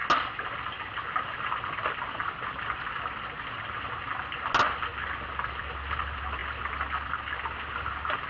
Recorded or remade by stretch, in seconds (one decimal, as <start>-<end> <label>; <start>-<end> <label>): 0.0-8.3 recorded